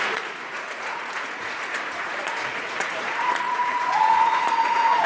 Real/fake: fake